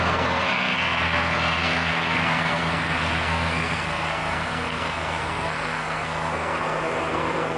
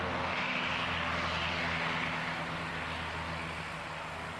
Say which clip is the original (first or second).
second